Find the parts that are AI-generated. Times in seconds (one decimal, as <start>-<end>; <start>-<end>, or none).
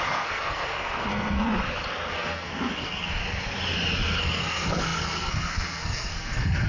0.0-1.5; 2.1-3.2; 4.2-6.7